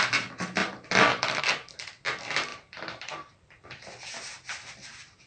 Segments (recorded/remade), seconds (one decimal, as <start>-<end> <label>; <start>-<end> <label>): 0.0-0.6 recorded; 0.6-1.4 remade; 1.4-2.5 recorded; 2.5-4.1 remade; 4.1-5.3 recorded